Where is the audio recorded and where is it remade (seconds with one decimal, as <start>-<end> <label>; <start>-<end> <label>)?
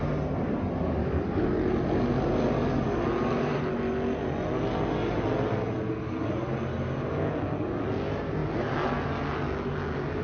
0.0-1.0 recorded; 1.0-1.6 remade; 1.6-10.2 recorded